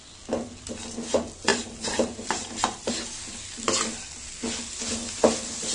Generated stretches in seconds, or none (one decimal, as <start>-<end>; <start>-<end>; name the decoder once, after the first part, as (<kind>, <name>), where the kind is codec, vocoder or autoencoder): 1.5-2.9 (vocoder, BigVGAN v2)